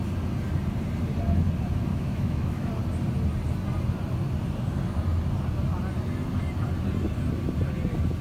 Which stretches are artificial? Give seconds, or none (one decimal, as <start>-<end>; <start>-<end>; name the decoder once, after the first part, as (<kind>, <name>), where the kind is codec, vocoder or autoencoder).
1.9-2.7 (autoencoder, DAC-VAE)

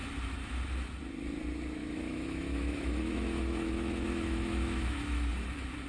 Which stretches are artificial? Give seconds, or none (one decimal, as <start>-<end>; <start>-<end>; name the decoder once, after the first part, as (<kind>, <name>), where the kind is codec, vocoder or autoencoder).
1.8-5.3 (autoencoder, DAC-VAE)